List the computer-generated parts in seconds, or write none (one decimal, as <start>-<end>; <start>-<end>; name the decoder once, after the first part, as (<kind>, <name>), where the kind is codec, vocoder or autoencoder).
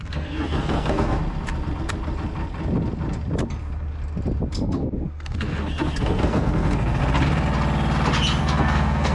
0.0-1.2 (codec, SNAC); 4.5-7.0; 8.4-9.1